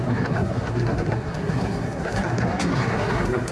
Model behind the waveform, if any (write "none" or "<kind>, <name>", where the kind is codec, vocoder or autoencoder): codec, SNAC